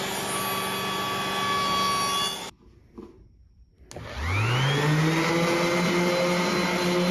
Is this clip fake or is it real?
real